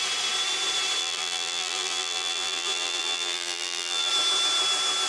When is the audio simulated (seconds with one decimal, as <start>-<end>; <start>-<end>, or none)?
1.0-4.1